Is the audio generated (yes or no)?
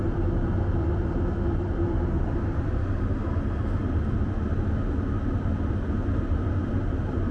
no